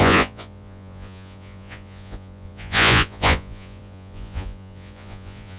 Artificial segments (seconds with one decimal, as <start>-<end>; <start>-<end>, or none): 0.0-5.6